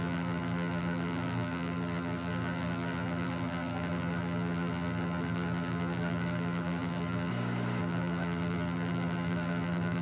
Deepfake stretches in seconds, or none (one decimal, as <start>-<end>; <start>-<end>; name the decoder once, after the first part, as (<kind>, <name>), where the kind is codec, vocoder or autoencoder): 0.0-7.3 (vocoder, BigVGAN v2); 7.8-10.0